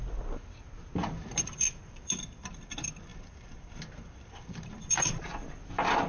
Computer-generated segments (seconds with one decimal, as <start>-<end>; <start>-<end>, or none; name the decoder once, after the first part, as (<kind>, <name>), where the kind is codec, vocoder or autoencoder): 1.0-2.5 (vocoder, BigVGAN v2); 3.1-5.3